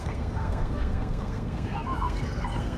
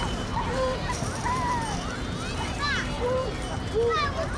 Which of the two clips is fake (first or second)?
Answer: first